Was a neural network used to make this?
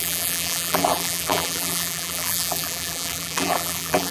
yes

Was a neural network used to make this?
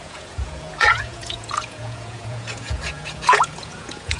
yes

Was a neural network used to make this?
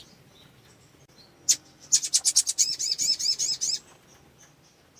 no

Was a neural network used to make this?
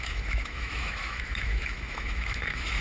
yes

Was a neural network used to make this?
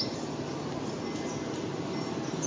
no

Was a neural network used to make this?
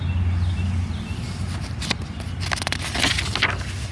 no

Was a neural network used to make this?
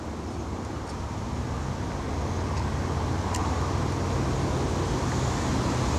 no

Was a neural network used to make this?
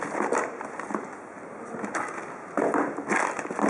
no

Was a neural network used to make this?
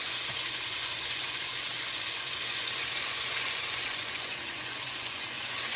yes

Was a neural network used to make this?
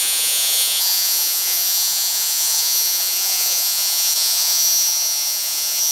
yes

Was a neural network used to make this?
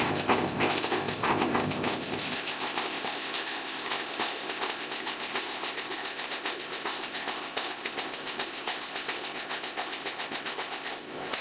yes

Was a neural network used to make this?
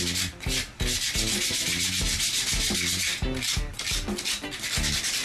no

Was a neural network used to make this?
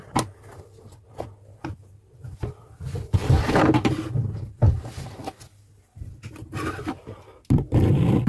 no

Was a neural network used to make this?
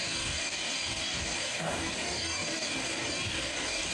yes